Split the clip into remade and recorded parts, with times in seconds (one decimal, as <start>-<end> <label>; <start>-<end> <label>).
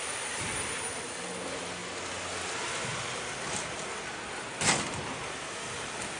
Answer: 0.0-6.2 recorded